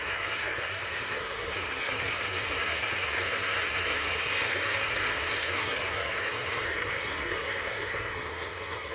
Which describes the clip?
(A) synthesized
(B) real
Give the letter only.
A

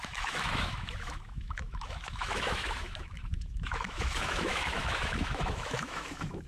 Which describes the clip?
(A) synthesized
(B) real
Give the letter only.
A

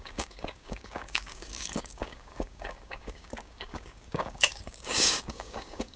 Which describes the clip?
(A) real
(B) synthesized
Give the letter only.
B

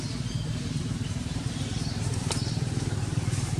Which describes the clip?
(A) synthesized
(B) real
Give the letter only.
A